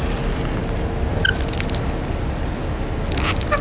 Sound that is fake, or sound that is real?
real